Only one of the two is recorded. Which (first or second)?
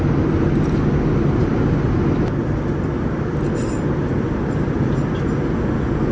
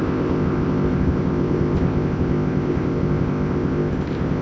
first